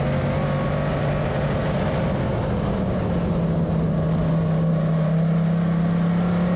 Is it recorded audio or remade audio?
recorded